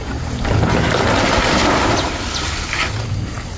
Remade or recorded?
recorded